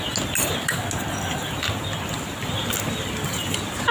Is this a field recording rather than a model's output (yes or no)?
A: yes